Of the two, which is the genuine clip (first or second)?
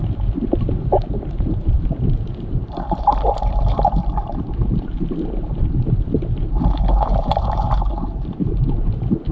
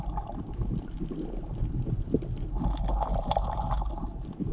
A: second